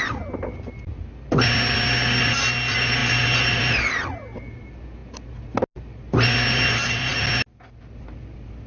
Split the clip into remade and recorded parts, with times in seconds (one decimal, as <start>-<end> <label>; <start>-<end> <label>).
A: 0.0-8.7 recorded